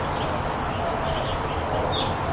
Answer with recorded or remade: recorded